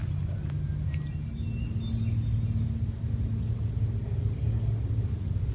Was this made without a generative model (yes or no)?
yes